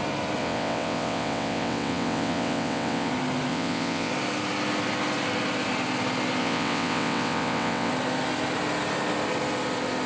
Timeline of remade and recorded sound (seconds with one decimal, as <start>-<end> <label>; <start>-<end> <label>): 0.0-0.4 recorded; 0.4-3.1 remade; 3.1-3.5 recorded; 3.5-4.1 remade; 4.1-6.4 recorded; 6.4-7.9 remade; 7.9-10.1 recorded